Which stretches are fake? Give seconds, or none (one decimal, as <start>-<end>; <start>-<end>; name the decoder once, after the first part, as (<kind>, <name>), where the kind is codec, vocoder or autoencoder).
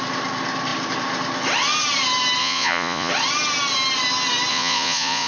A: 2.4-3.1 (vocoder, Vocos); 4.5-5.3